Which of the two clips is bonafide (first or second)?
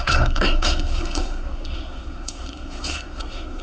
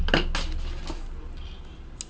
second